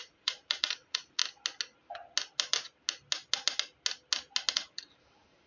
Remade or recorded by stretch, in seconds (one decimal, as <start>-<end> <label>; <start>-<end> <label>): 0.0-1.2 remade; 1.2-4.5 recorded; 4.5-5.5 remade